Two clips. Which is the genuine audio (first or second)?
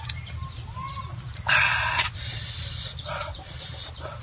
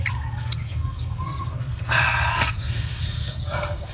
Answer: first